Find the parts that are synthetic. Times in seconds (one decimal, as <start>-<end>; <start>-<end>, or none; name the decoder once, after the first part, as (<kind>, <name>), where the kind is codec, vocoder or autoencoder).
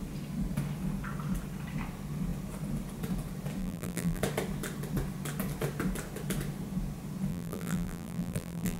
3.6-4.2 (vocoder, BigVGAN v2); 7.3-8.8